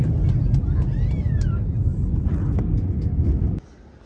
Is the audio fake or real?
real